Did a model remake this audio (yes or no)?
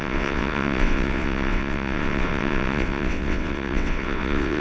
yes